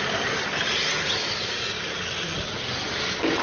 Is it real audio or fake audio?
real